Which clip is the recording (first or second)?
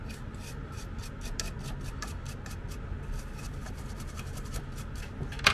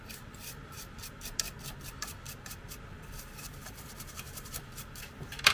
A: first